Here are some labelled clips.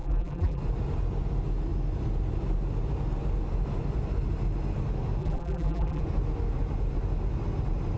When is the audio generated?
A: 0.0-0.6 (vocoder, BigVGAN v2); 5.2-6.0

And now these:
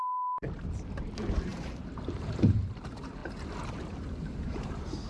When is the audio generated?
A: 0.0-3.2 (vocoder, BigVGAN v2); 3.7-5.1